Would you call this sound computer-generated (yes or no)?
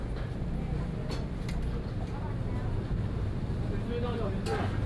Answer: no